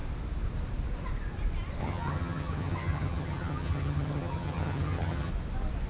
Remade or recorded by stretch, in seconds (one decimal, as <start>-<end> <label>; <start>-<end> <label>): 0.0-1.8 recorded; 1.8-5.3 remade; 5.3-5.9 recorded